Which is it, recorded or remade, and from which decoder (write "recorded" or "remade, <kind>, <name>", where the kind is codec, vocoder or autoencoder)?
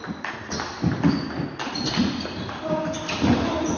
recorded